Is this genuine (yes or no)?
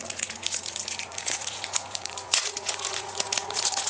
no